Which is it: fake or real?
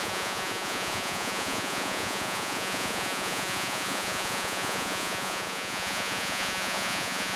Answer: fake